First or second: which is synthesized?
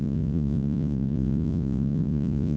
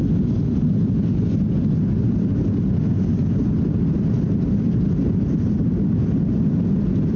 first